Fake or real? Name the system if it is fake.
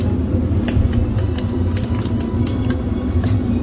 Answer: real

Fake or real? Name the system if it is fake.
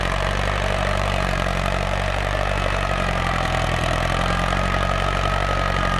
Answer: fake, vocoder, BigVGAN v2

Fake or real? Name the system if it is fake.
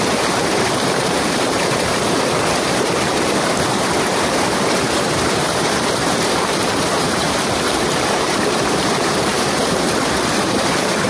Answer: fake, vocoder, BigVGAN v2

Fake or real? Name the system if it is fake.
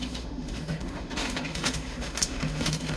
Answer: fake, autoencoder, DAC-VAE